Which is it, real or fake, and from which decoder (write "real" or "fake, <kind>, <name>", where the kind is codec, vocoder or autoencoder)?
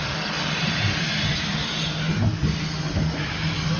real